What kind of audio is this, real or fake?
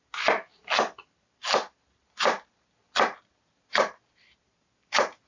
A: real